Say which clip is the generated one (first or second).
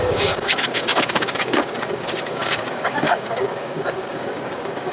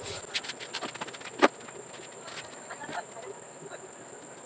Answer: first